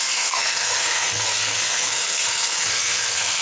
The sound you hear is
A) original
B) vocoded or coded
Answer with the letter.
B